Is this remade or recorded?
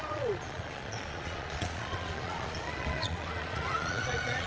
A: remade